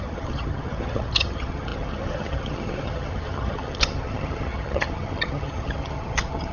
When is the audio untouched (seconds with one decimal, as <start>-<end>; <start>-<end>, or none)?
none